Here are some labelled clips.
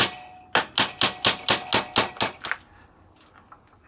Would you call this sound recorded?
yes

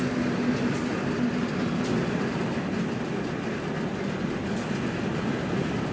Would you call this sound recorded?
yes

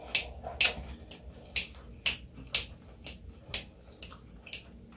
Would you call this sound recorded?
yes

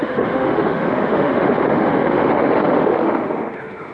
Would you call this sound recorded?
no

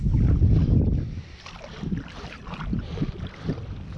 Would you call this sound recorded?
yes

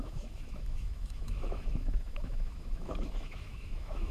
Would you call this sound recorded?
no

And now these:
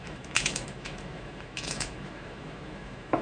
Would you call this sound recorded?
no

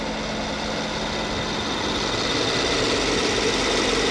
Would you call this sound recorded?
yes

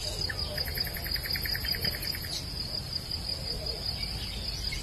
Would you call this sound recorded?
yes